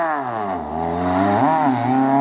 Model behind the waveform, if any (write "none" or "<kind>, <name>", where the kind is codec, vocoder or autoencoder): none